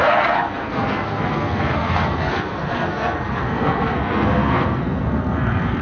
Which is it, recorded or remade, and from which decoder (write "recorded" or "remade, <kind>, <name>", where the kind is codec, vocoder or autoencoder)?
remade, codec, SNAC